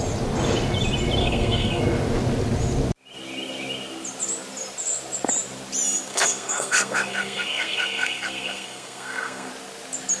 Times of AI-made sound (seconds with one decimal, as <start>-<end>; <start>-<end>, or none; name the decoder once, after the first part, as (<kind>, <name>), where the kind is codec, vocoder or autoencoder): 1.2-1.8 (codec, SNAC); 6.1-9.5